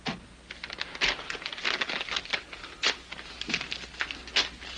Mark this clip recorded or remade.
recorded